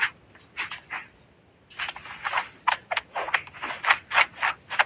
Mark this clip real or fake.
real